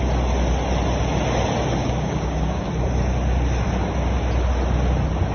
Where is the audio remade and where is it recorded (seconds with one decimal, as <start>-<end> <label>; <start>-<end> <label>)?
0.0-1.8 recorded; 1.8-2.7 remade; 2.7-5.3 recorded

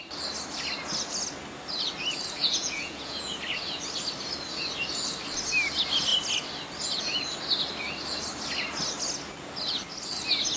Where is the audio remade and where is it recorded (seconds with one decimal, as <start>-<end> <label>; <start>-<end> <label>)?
0.0-2.4 recorded; 2.4-3.4 remade; 3.4-10.6 recorded